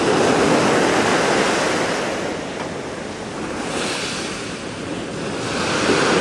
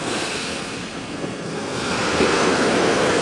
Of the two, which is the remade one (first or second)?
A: second